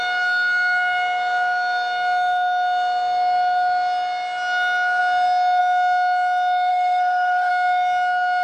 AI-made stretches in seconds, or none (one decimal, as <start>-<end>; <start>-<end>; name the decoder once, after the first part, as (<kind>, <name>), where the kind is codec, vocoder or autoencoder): 6.7-7.5 (codec, SNAC)